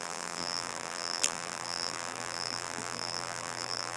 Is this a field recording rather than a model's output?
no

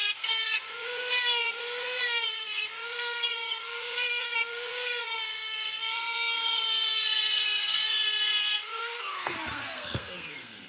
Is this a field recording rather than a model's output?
no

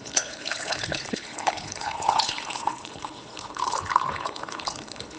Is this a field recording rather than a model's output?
no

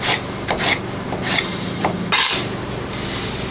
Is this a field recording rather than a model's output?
yes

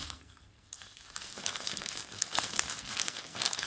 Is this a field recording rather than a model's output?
no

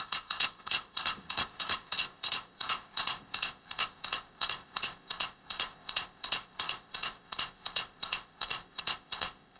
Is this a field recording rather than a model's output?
no